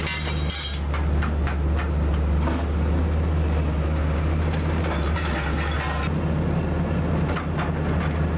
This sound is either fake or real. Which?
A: real